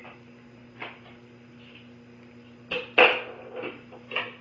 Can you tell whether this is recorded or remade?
recorded